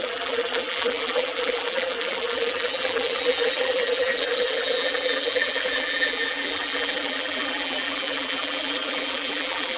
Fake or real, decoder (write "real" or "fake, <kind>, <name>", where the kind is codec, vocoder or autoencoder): fake, vocoder, BigVGAN v2